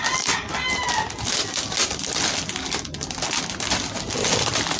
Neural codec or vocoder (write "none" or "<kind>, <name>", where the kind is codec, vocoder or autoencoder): none